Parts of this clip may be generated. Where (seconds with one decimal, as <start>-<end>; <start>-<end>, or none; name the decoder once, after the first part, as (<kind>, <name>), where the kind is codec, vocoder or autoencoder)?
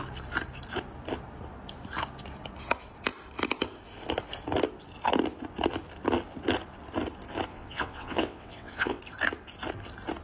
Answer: 7.5-9.0 (vocoder, WaveNeXt)